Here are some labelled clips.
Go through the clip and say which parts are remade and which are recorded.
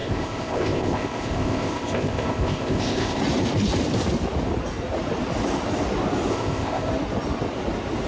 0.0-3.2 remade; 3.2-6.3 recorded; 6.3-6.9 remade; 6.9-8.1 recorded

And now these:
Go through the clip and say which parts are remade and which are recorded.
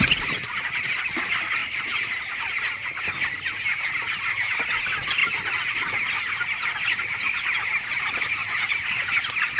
0.0-9.6 recorded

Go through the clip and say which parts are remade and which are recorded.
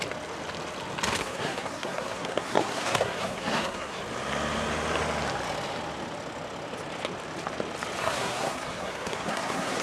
0.0-1.2 recorded; 1.2-4.0 remade; 4.0-8.0 recorded; 8.0-9.8 remade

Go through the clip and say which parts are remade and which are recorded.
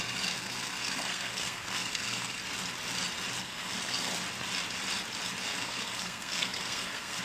0.0-2.4 remade; 2.4-3.4 recorded; 3.4-4.1 remade; 4.1-5.4 recorded; 5.4-7.2 remade